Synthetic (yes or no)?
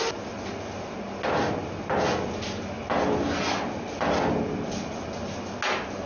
no